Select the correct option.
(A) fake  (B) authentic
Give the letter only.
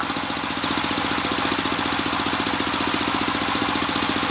B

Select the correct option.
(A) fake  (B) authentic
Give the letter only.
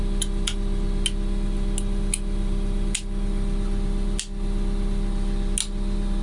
B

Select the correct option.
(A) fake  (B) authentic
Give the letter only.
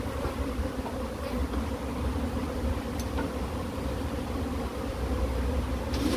B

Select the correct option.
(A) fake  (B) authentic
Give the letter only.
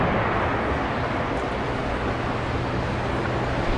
B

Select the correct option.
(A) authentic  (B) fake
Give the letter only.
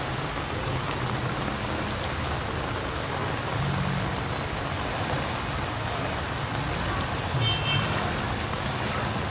A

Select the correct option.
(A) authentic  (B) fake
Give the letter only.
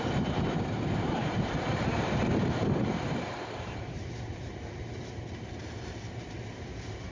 B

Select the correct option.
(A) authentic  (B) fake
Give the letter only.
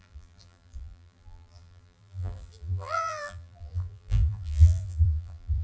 B